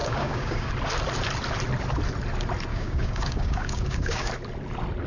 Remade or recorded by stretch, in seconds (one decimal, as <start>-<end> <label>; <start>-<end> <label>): 0.0-0.7 remade; 0.7-2.7 recorded; 2.7-4.3 remade; 4.3-5.1 recorded